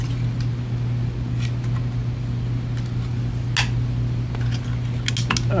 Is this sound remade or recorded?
recorded